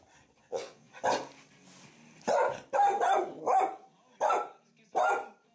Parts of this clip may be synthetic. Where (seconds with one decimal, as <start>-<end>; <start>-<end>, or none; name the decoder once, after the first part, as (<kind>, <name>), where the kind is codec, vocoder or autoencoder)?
0.4-0.9 (vocoder, Vocos)